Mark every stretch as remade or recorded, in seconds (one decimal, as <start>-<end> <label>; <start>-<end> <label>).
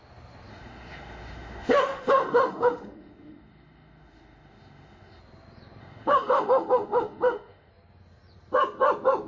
0.0-0.5 recorded; 0.5-5.2 remade; 5.2-5.8 recorded; 5.8-7.7 remade; 7.7-9.3 recorded